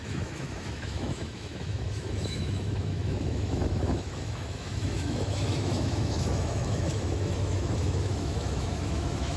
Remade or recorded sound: remade